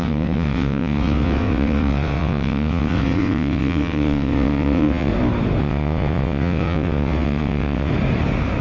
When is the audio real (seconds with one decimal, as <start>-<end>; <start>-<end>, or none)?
5.1-5.6; 7.9-8.6